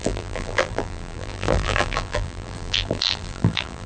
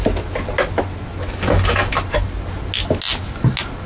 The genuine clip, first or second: second